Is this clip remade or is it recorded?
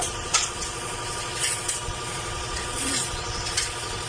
remade